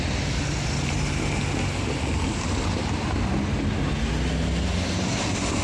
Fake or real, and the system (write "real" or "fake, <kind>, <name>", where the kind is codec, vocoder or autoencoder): real